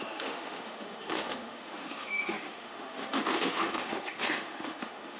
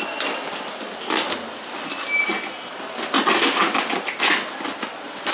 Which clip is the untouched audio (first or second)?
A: second